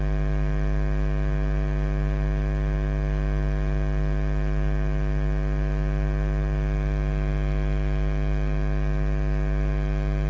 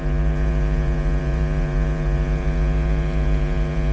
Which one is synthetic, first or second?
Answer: second